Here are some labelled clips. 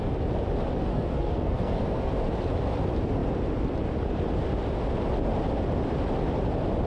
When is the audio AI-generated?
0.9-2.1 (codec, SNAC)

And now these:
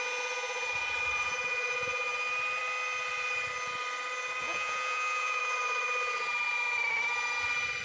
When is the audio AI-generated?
4.4-5.4 (vocoder, Vocos)